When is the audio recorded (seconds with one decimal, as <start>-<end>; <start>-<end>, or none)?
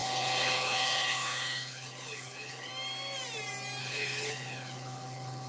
2.7-3.8